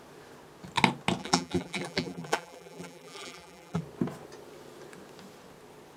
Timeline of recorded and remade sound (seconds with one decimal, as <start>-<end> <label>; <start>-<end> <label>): 0.0-1.2 recorded; 1.2-3.8 remade; 3.8-6.0 recorded